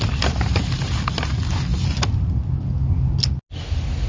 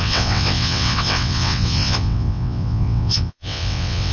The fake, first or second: second